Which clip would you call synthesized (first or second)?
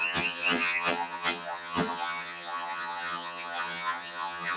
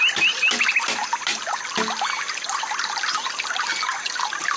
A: first